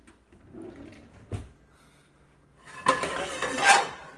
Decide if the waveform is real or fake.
real